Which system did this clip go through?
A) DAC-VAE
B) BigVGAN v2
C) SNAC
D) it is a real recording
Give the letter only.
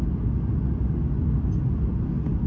D